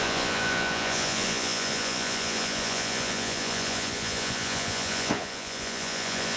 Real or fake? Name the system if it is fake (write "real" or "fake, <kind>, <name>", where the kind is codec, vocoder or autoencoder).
fake, vocoder, Vocos